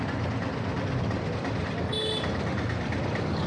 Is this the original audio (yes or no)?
yes